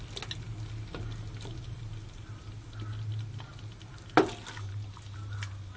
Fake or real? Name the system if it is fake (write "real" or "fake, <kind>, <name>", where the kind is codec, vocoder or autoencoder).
real